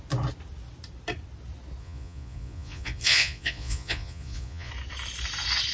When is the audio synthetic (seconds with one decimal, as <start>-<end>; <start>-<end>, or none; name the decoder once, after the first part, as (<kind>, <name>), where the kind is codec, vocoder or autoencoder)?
1.8-4.7 (vocoder, Vocos)